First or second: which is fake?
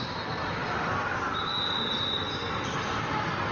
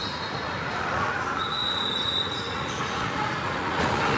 second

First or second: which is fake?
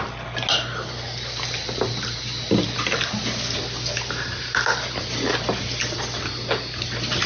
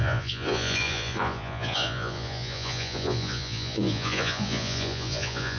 second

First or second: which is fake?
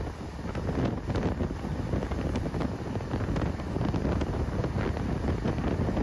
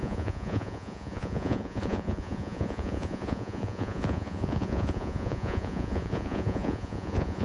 second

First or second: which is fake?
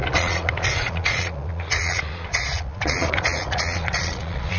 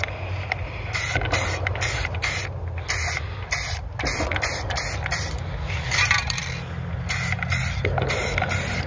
first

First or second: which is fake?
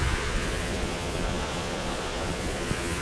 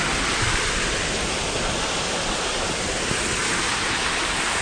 first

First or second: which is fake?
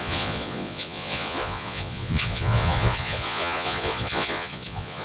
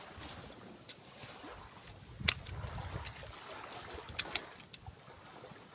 first